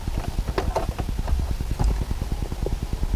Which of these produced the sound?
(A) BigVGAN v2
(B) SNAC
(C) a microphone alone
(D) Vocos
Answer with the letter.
C